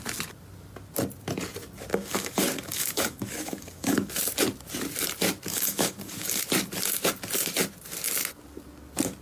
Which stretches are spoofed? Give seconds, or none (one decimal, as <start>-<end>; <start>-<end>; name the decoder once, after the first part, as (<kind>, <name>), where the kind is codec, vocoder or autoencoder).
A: 1.9-4.1 (codec, DAC); 5.5-6.4